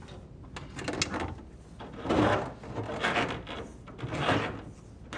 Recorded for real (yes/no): yes